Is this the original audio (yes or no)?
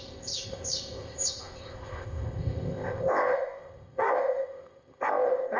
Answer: no